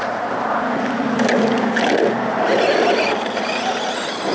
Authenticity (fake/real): real